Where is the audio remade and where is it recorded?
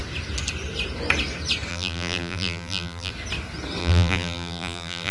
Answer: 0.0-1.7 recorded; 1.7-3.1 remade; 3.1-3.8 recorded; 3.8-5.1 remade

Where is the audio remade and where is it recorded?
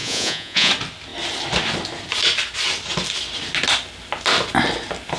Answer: 0.0-0.7 remade; 0.7-5.2 recorded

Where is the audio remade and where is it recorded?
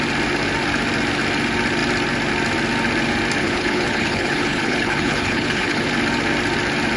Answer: 0.0-3.4 recorded; 3.4-5.9 remade; 5.9-7.0 recorded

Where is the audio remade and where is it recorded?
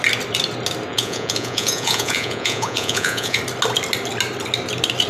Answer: 0.0-0.9 recorded; 0.9-3.4 remade; 3.4-5.1 recorded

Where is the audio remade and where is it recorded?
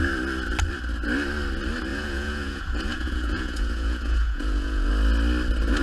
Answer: 0.0-1.9 recorded; 1.9-4.9 remade; 4.9-5.8 recorded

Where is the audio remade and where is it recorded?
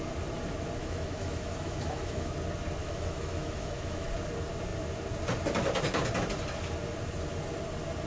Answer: 0.0-0.8 recorded; 0.8-2.3 remade; 2.3-2.8 recorded; 2.8-4.1 remade; 4.1-8.1 recorded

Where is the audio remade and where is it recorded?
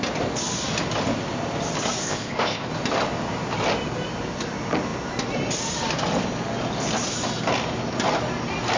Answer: 0.0-2.0 recorded; 2.0-2.7 remade; 2.7-8.8 recorded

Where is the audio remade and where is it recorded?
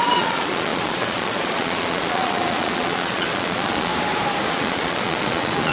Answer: 0.0-3.9 remade; 3.9-4.5 recorded; 4.5-5.7 remade